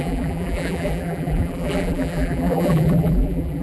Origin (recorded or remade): remade